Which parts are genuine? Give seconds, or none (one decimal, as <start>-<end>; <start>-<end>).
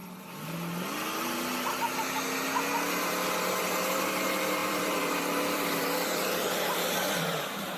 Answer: 0.0-4.0